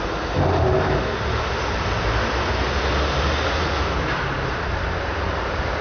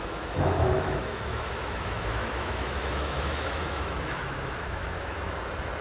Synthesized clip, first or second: second